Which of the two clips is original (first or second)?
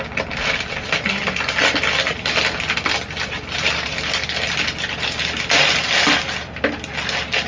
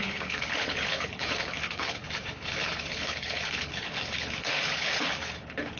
first